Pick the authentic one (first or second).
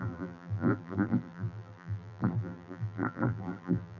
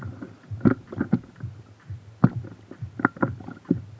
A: second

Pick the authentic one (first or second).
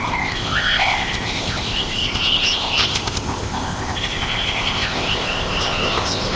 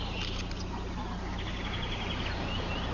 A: second